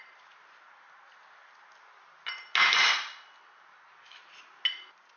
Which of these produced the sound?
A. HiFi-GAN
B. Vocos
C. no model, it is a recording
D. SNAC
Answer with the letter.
C